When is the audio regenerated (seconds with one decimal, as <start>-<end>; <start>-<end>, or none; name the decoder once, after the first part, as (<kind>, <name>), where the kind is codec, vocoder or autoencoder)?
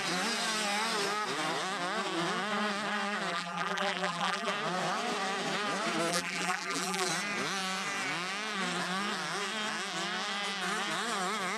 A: 3.3-4.5 (vocoder, BigVGAN v2); 6.1-7.1